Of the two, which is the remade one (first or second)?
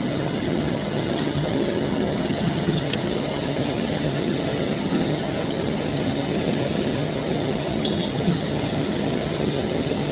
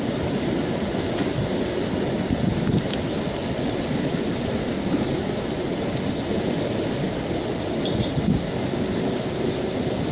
first